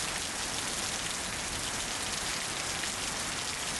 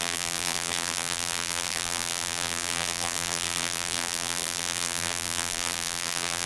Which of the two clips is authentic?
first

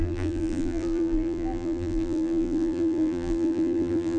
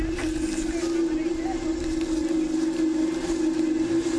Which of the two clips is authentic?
second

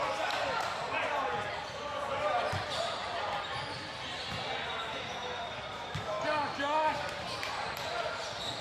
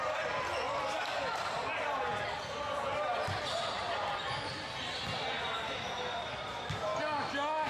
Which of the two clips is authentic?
second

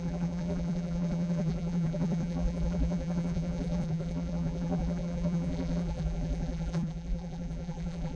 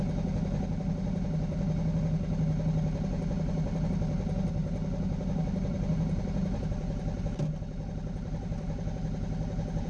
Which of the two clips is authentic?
second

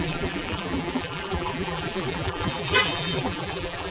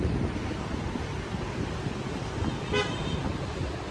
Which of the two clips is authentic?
second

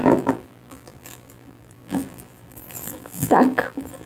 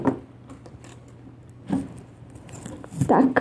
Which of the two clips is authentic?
second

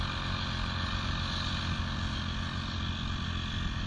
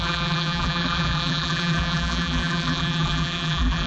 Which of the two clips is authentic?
first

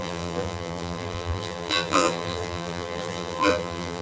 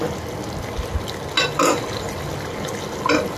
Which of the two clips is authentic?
second